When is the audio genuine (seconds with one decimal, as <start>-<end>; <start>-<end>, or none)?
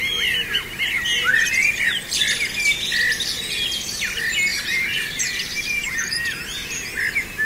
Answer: 0.0-4.5; 6.4-7.4